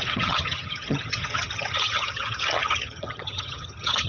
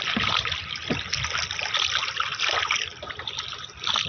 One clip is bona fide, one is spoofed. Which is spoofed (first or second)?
first